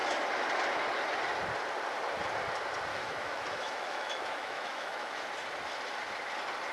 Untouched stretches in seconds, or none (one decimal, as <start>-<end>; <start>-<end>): 0.0-2.9; 5.2-6.7